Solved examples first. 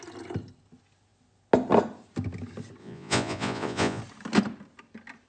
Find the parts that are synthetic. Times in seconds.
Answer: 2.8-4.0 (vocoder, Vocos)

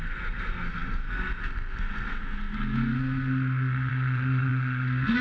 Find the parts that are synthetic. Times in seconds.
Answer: 0.0-5.2 (codec, SNAC)

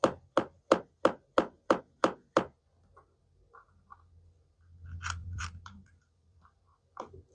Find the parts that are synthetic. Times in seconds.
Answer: 5.2-6.6 (vocoder, BigVGAN v2)

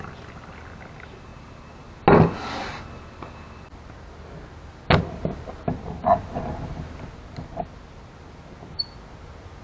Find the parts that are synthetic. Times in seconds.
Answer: none

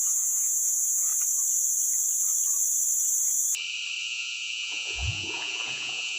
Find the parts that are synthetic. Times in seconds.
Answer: 0.0-1.1 (vocoder, Vocos); 4.0-6.2

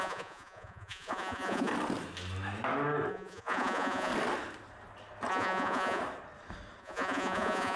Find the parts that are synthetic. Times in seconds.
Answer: 0.0-1.7 (vocoder, Vocos); 3.1-4.1; 5.3-6.0; 6.8-7.8